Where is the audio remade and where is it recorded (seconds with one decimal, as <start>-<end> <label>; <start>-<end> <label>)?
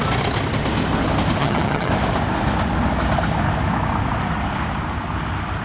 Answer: 0.0-1.4 recorded; 1.4-1.9 remade; 1.9-5.6 recorded